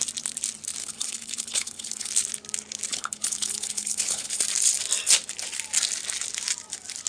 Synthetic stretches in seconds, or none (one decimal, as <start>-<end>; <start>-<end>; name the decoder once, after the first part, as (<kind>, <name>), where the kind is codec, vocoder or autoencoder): 0.8-2.1 (codec, HILCodec); 2.9-4.4